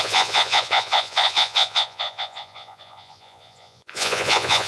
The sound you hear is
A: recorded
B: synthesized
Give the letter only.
B